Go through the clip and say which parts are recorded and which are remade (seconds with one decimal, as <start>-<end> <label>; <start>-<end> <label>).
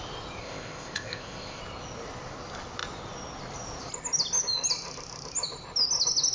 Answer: 0.0-0.4 recorded; 0.4-1.6 remade; 1.6-6.3 recorded